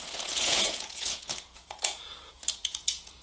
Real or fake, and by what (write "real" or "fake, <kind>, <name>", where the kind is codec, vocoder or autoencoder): fake, vocoder, Vocos